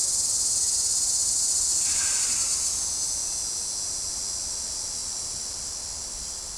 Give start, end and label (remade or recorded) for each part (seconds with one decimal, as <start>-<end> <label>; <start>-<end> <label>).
0.0-6.6 recorded